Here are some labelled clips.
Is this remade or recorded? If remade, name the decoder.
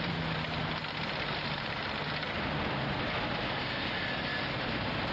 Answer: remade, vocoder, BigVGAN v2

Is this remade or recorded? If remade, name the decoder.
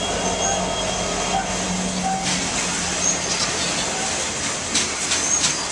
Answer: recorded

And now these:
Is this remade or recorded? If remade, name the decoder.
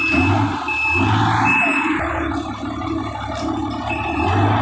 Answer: recorded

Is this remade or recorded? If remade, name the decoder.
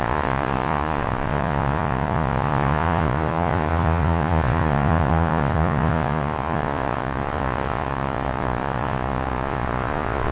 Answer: remade, vocoder, Vocos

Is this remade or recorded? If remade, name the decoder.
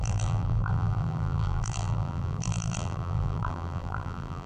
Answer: remade, vocoder, BigVGAN v2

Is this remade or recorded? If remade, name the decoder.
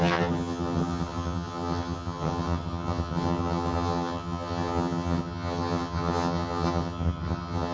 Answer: remade, vocoder, HiFi-GAN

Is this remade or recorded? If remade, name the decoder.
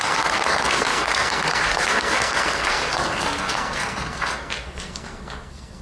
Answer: remade, codec, SNAC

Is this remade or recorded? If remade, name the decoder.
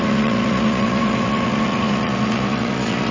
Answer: remade, vocoder, Vocos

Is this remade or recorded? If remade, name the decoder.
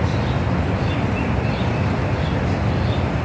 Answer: recorded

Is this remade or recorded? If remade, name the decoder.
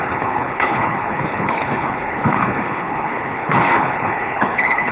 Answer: remade, codec, HILCodec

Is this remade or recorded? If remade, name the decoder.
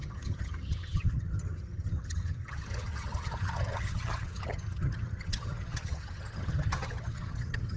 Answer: remade, vocoder, HiFi-GAN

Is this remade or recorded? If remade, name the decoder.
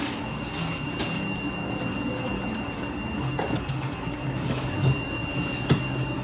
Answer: remade, codec, DAC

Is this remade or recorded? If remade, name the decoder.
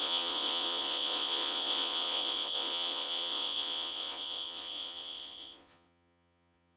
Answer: remade, vocoder, Vocos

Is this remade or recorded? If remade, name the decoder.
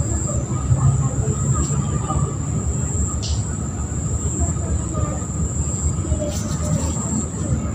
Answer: recorded